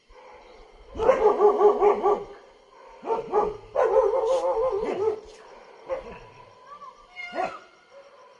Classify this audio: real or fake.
real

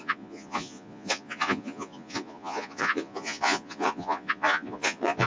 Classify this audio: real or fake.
fake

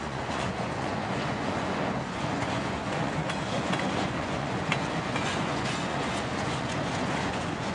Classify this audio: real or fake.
fake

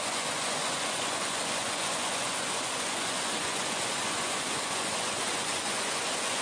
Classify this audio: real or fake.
fake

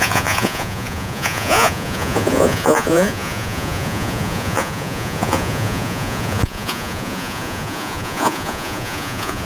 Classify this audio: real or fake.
fake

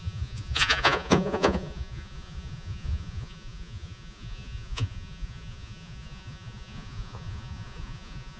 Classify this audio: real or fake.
fake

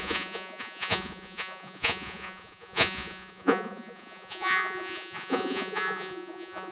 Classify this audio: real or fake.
fake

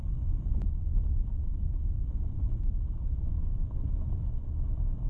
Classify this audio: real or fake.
real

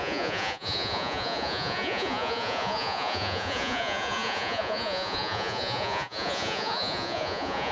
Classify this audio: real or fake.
fake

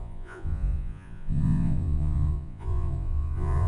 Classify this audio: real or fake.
fake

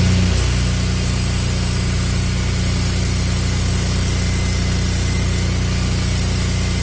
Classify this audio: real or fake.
real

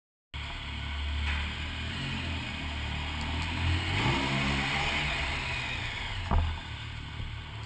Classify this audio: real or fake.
real